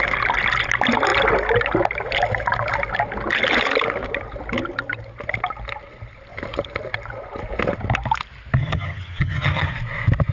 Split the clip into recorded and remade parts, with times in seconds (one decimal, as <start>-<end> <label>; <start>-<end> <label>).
0.0-8.6 recorded; 8.6-9.7 remade; 9.7-10.3 recorded